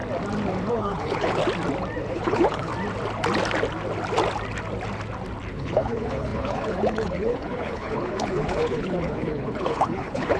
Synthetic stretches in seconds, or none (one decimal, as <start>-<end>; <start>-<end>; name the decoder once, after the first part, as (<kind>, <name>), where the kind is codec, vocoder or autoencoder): 0.7-1.4 (codec, HILCodec); 2.1-2.7; 5.5-10.4